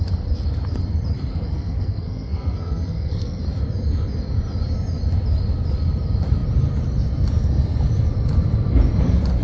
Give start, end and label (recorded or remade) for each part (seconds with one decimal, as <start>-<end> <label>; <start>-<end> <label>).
0.0-1.3 recorded; 1.3-3.4 remade; 3.4-9.4 recorded